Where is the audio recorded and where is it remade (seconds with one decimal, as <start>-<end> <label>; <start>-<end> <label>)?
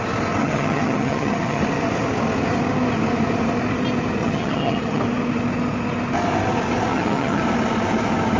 0.0-0.4 recorded; 0.4-1.6 remade; 1.6-4.2 recorded; 4.2-5.0 remade; 5.0-6.9 recorded; 6.9-7.4 remade; 7.4-8.4 recorded